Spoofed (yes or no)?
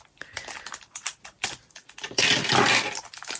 no